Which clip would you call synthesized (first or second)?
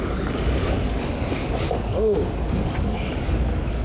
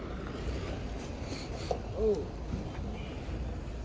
first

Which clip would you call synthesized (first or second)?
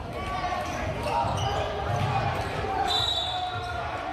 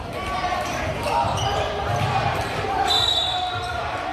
second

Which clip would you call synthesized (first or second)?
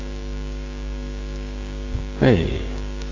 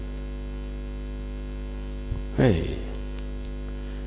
first